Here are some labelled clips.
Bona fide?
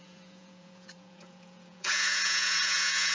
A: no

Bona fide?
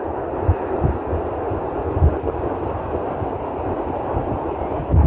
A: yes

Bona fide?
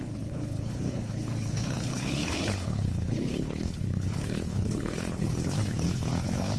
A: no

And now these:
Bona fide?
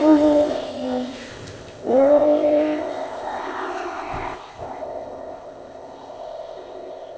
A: no